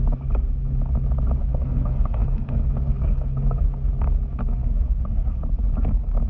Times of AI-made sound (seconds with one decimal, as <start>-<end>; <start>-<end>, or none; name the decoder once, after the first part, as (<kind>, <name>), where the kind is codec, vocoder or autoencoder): 1.4-3.6 (codec, SNAC); 4.4-5.4